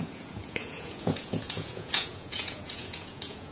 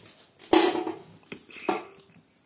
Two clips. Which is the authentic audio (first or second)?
second